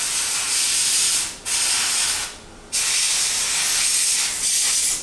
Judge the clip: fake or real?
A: real